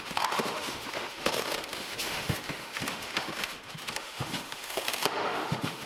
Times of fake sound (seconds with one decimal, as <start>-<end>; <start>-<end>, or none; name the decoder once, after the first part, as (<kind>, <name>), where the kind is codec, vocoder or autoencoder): 0.0-5.9 (autoencoder, DAC-VAE)

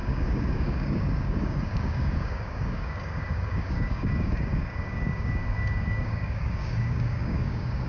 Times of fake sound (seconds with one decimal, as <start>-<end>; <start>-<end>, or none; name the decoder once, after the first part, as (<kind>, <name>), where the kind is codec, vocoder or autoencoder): 0.0-7.9 (codec, DAC)

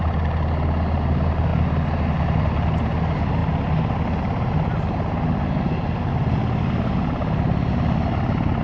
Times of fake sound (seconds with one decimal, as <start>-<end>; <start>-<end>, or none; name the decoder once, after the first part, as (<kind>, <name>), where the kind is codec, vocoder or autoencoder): none

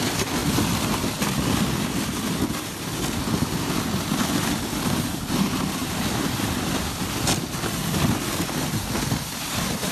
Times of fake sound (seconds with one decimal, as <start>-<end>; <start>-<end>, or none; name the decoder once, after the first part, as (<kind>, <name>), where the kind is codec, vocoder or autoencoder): 5.8-7.0 (vocoder, BigVGAN v2)